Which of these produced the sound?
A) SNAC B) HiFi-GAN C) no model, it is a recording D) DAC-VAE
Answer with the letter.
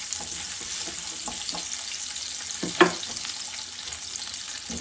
C